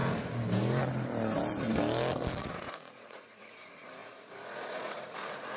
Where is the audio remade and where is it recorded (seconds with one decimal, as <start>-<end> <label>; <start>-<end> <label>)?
0.0-2.4 recorded; 2.4-5.6 remade